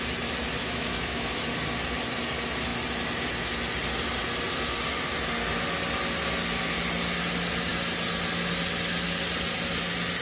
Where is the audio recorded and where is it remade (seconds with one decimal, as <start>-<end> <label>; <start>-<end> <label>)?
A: 0.0-0.6 recorded; 0.6-1.4 remade; 1.4-10.2 recorded